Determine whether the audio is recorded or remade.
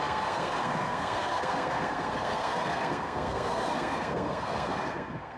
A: remade